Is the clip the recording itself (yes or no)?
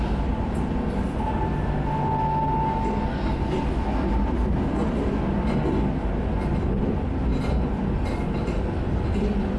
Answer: yes